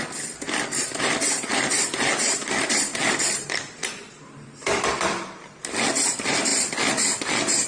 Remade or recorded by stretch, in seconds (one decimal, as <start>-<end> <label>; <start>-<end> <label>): 0.0-6.5 remade; 6.5-7.7 recorded